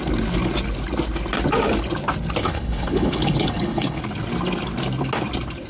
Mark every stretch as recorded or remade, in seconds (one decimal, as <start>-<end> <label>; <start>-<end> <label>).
0.0-2.4 recorded; 2.4-4.0 remade; 4.0-5.7 recorded